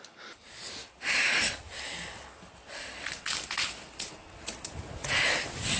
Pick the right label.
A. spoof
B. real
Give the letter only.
B